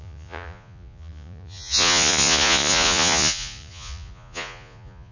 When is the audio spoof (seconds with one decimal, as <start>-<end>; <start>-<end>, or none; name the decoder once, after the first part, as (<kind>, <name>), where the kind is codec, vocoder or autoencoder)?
0.0-5.1 (vocoder, Vocos)